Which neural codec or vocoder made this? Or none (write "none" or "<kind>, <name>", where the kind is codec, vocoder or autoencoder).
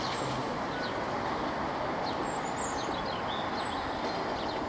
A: none